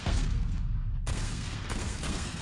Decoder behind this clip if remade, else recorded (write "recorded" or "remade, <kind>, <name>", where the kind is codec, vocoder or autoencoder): remade, codec, SNAC